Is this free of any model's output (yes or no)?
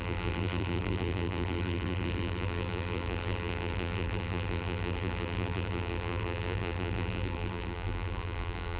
no